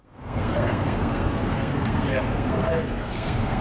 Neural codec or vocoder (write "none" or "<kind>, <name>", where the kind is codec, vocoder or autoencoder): codec, SNAC